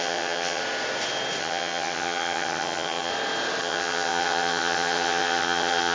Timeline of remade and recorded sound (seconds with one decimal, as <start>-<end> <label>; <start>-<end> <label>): 0.0-0.6 remade; 0.6-1.4 recorded; 1.4-3.1 remade; 3.1-3.6 recorded; 3.6-5.9 remade